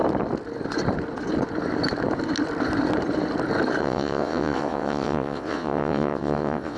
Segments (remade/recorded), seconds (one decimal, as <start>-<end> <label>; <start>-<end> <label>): 0.0-3.8 recorded; 3.8-6.8 remade